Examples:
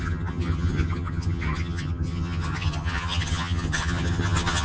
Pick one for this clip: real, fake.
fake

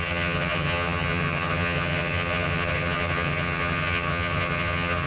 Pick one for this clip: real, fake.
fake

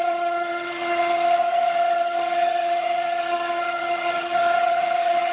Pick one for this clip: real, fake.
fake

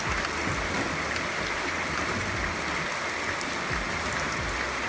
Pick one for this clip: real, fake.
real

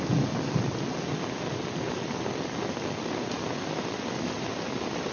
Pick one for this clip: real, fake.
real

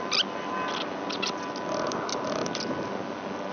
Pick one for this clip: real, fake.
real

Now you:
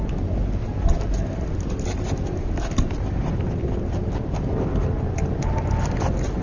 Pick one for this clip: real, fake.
real